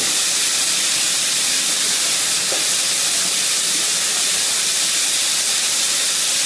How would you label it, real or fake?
real